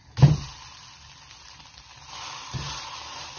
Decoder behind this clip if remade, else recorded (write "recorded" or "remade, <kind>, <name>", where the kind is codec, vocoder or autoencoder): recorded